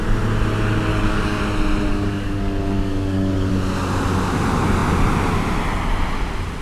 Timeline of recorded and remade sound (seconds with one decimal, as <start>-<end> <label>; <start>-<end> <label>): 0.0-0.9 recorded; 0.9-1.4 remade; 1.4-1.9 recorded; 1.9-3.5 remade; 3.5-6.6 recorded